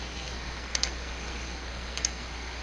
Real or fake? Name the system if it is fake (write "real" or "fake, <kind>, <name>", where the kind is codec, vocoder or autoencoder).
fake, codec, SNAC